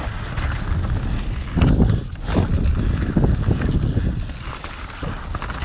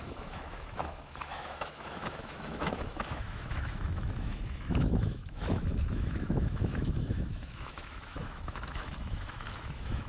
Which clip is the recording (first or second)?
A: first